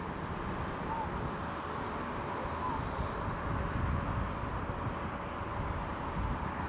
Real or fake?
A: real